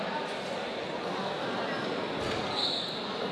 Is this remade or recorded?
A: recorded